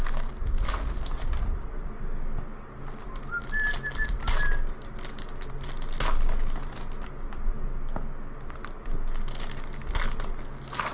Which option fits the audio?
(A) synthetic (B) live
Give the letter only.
B